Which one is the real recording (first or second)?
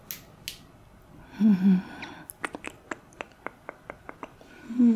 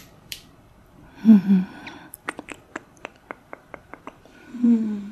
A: first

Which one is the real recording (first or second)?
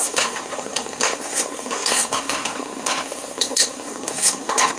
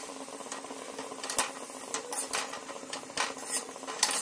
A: second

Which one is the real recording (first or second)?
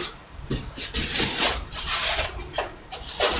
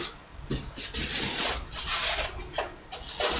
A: second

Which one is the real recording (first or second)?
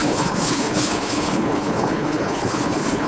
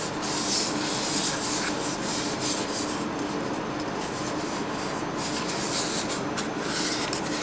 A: second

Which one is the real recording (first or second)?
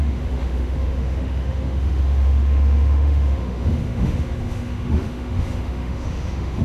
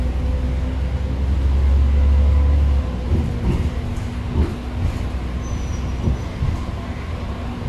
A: second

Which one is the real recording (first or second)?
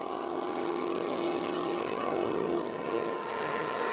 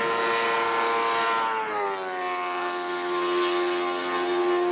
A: second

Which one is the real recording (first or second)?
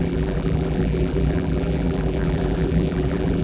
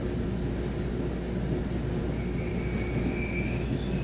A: second